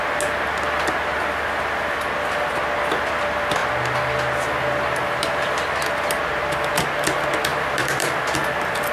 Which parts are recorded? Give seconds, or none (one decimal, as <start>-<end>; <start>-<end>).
0.0-7.5; 8.2-8.9